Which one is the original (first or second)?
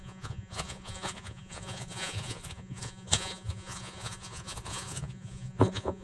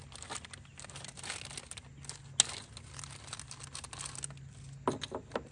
second